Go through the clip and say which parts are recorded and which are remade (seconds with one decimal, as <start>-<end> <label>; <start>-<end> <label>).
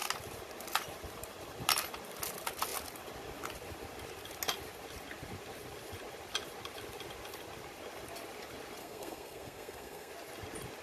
0.0-8.8 recorded; 8.8-10.1 remade; 10.1-10.8 recorded